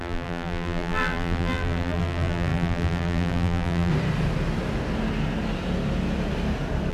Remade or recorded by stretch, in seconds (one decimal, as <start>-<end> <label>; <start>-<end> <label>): 0.0-3.9 remade; 3.9-6.9 recorded